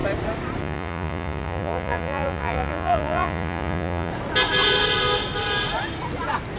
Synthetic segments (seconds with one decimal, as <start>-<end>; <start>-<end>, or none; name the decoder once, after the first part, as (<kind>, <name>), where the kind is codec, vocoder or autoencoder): 0.6-4.1 (vocoder, Vocos)